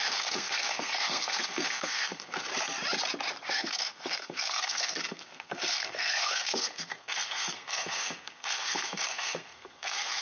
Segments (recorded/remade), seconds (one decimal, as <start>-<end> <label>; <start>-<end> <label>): 0.0-2.5 remade; 2.5-3.5 recorded; 3.5-10.2 remade